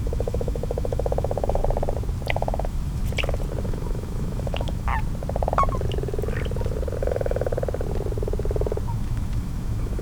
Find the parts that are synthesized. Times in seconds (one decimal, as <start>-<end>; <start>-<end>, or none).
0.0-1.6; 2.3-3.0; 3.6-4.9; 7.0-7.5; 8.9-10.0